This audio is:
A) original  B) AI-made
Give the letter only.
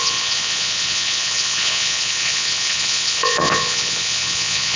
B